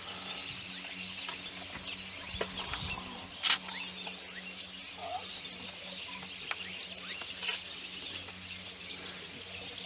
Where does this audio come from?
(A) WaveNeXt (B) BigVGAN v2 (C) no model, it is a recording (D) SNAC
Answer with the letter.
C